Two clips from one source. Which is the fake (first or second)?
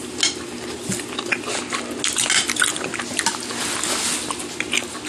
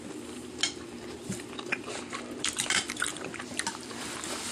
second